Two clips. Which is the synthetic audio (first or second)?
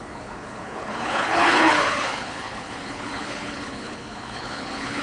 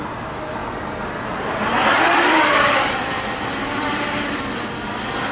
first